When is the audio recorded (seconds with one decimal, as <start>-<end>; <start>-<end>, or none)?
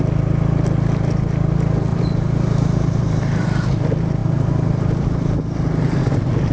0.0-1.9; 3.2-4.2; 5.4-6.5